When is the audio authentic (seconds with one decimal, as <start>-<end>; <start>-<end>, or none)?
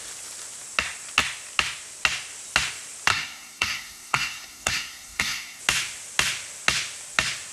0.0-3.1; 5.6-7.5